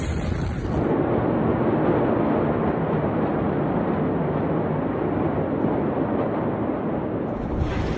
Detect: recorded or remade recorded